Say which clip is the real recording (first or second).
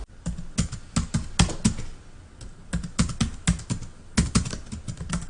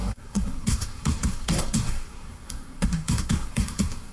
first